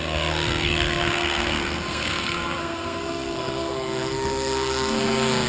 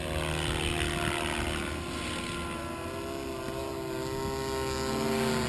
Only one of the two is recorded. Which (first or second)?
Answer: second